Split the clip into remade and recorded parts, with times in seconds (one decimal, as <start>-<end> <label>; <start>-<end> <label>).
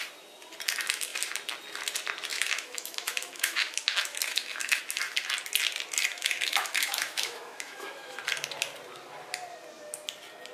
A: 0.0-2.3 recorded; 2.3-4.8 remade; 4.8-6.1 recorded; 6.1-8.2 remade; 8.2-10.5 recorded